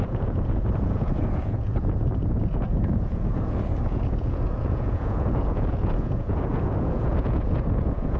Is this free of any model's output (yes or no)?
no